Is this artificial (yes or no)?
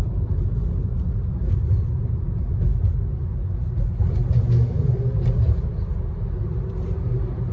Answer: no